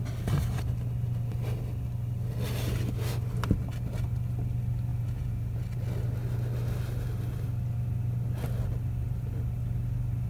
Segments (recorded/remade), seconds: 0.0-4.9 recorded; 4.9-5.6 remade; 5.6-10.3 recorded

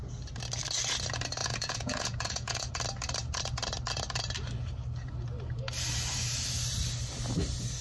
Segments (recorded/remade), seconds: 0.0-1.4 recorded; 1.4-2.7 remade; 2.7-7.8 recorded

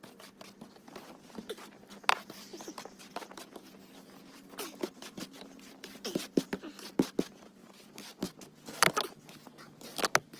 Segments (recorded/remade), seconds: 0.0-10.4 recorded